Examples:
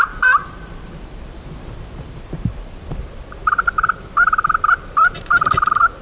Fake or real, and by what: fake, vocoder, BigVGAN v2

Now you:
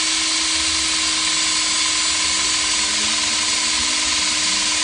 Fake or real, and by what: real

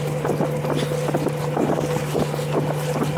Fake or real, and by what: real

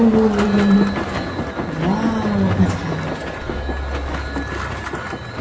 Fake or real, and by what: real